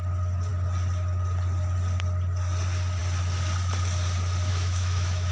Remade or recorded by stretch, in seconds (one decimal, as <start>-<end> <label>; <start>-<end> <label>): 0.0-4.5 recorded; 4.5-5.3 remade

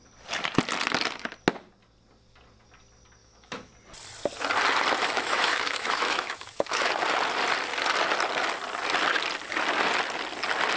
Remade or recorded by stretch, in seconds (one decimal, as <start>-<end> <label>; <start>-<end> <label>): 0.0-3.2 recorded; 3.2-3.7 remade; 3.7-5.0 recorded; 5.0-6.9 remade; 6.9-10.8 recorded